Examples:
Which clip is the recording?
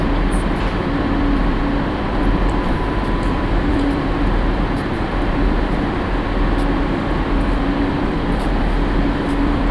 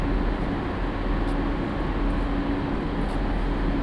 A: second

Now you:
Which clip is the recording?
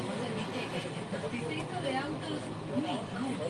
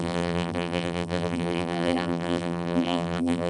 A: first